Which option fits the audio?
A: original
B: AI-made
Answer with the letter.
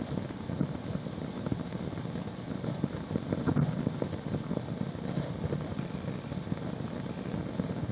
A